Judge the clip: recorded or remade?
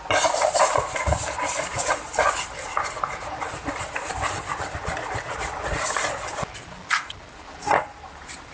recorded